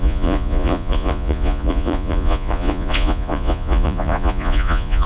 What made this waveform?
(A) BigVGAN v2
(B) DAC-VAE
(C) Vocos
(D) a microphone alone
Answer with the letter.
C